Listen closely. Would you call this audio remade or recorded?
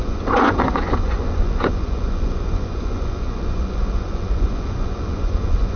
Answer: remade